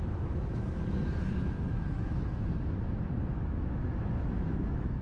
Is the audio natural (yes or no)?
no